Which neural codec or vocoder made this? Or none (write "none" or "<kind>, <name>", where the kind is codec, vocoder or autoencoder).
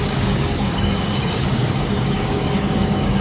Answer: codec, DAC